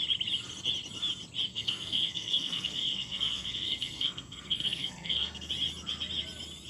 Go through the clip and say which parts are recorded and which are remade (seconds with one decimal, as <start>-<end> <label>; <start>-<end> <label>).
0.0-1.5 recorded; 1.5-5.5 remade; 5.5-6.7 recorded